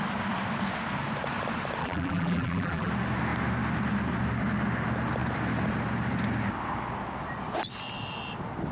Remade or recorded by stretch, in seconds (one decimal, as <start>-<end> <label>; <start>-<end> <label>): 0.0-1.8 recorded; 1.8-2.9 remade; 2.9-8.7 recorded